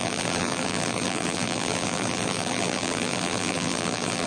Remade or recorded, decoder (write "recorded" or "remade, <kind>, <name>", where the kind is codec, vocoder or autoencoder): remade, vocoder, BigVGAN v2